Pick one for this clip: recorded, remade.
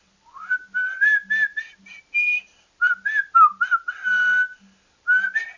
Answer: recorded